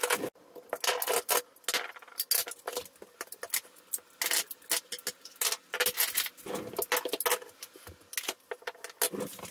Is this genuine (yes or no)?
yes